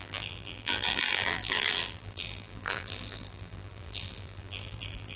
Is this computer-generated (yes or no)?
yes